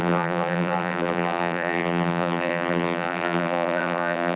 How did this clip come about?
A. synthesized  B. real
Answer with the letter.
A